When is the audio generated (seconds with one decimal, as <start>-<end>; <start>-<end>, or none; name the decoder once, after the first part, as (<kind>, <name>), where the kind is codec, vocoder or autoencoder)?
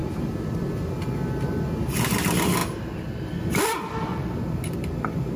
none